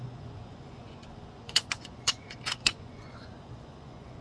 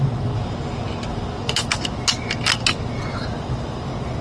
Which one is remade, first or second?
first